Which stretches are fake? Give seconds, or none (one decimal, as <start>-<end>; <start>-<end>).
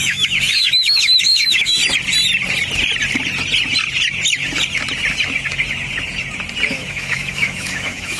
0.0-1.8; 6.7-8.2